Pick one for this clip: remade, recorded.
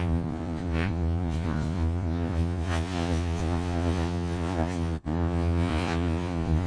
remade